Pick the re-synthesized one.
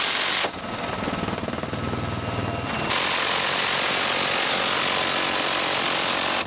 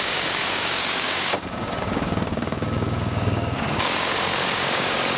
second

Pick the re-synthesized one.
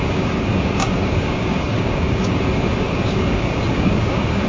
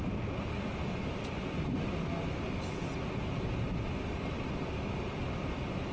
first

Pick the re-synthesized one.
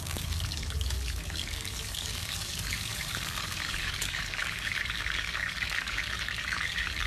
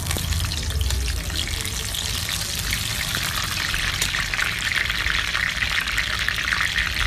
first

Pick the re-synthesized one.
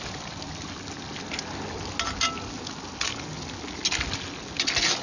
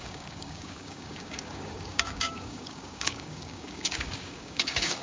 second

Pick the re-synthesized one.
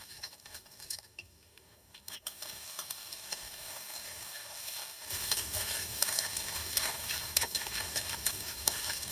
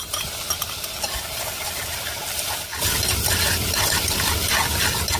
first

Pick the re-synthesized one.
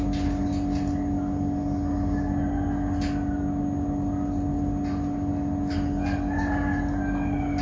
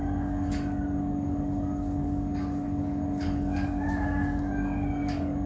second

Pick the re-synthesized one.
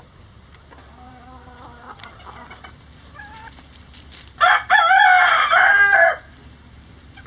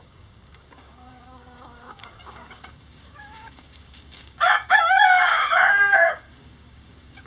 second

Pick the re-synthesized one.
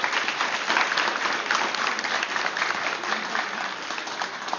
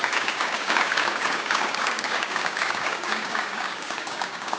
second